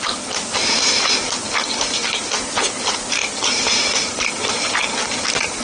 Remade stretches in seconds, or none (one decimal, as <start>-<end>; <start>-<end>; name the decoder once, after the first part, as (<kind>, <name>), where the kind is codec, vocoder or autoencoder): 1.6-2.2 (vocoder, BigVGAN v2); 3.2-4.3